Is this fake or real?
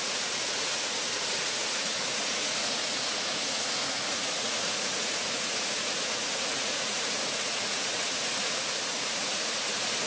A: fake